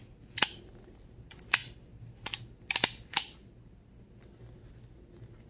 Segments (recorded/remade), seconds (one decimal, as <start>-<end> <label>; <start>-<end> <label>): 0.0-5.5 recorded